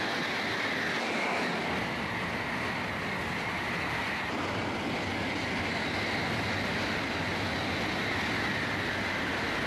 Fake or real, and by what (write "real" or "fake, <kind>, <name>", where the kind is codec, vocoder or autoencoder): real